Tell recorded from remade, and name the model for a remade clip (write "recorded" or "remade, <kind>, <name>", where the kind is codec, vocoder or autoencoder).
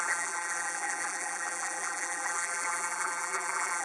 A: remade, vocoder, BigVGAN v2